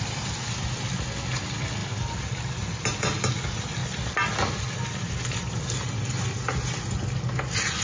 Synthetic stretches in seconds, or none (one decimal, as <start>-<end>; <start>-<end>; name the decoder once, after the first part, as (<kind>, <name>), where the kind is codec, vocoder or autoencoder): none